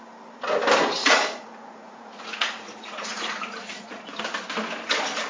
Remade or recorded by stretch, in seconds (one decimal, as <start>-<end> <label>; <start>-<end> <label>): 0.0-1.0 recorded; 1.0-4.2 remade; 4.2-5.3 recorded